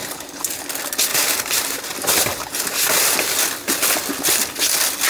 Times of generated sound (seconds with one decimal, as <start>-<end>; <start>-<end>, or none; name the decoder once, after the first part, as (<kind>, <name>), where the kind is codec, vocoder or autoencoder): 0.0-0.6 (vocoder, BigVGAN v2); 1.1-3.1